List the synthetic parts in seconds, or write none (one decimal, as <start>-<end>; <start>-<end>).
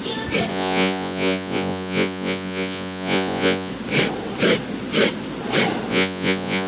0.5-3.7; 5.9-6.7